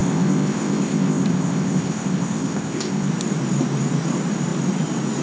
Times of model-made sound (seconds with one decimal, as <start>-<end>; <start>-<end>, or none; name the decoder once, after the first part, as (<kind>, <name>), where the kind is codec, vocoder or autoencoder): 0.0-3.1 (codec, ZipCodec)